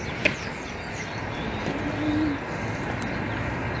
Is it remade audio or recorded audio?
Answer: recorded